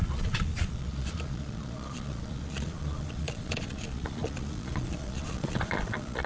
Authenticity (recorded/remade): remade